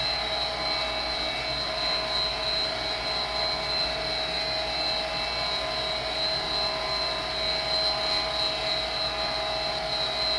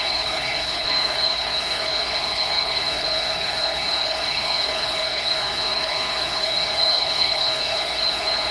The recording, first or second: first